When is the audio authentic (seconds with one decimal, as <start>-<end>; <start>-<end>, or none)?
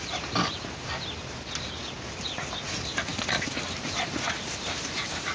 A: 0.0-5.3